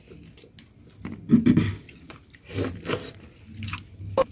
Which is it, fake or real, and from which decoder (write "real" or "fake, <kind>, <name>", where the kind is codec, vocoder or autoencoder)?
real